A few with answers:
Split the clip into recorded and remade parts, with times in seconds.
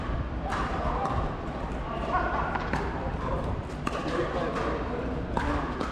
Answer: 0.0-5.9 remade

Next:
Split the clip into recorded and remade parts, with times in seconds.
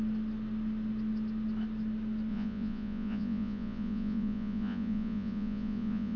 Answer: 0.0-2.3 recorded; 2.3-6.2 remade